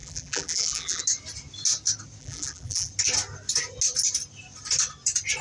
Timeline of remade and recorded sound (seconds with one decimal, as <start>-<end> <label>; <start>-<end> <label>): 0.0-1.0 remade; 1.0-2.2 recorded; 2.2-2.9 remade; 2.9-5.4 recorded